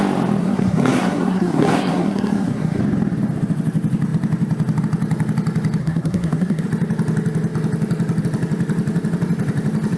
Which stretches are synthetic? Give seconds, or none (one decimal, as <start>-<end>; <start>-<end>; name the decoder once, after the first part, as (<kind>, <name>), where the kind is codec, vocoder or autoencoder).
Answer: 0.4-2.8 (codec, SNAC); 5.8-6.6